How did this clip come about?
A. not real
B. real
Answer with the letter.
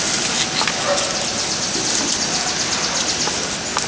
B